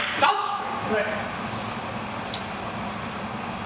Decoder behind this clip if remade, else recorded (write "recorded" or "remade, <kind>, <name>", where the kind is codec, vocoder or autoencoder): recorded